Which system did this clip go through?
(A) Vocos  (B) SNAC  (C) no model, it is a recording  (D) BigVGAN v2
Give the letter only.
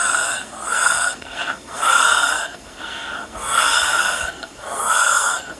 B